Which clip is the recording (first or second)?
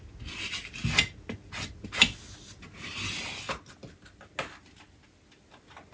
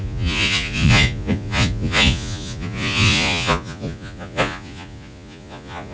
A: first